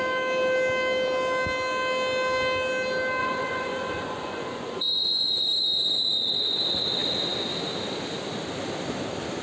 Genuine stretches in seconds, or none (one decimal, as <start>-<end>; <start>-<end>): 0.0-3.2; 5.5-9.4